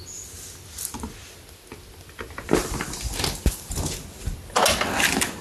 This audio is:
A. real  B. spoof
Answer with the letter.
A